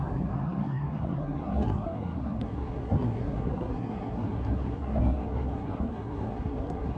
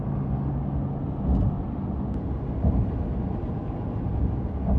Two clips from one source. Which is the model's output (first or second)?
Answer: first